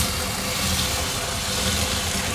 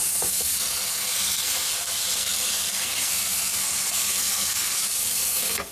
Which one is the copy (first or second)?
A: second